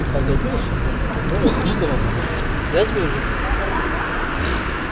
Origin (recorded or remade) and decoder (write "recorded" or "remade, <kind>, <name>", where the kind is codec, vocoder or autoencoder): recorded